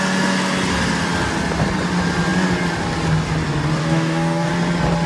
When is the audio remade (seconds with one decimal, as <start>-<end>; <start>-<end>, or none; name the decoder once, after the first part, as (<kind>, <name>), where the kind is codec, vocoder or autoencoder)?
3.8-4.5 (codec, DAC)